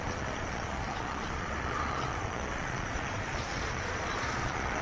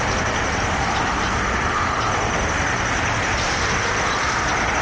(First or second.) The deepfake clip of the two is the first